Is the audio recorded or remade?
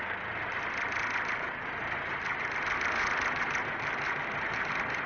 recorded